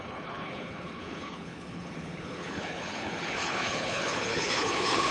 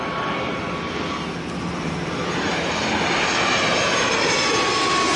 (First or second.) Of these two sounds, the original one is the second